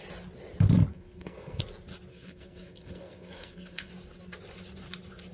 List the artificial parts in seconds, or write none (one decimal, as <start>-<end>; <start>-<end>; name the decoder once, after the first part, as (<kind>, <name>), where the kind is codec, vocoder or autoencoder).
0.9-1.6 (codec, SNAC); 2.1-3.9